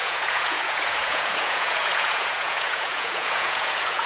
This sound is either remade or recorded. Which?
remade